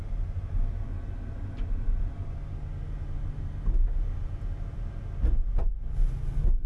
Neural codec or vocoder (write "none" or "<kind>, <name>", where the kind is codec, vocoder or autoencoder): none